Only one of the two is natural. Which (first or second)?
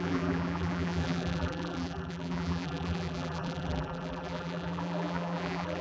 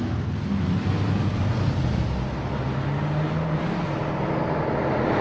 second